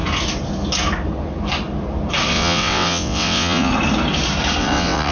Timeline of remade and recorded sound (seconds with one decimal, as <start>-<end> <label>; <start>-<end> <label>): 0.0-2.3 recorded; 2.3-3.7 remade; 3.7-4.6 recorded; 4.6-5.1 remade